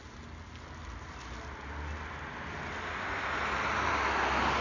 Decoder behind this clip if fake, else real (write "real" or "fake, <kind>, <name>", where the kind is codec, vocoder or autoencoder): real